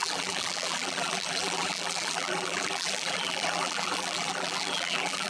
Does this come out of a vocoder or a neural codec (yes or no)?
yes